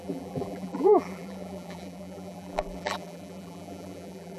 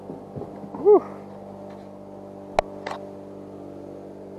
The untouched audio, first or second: second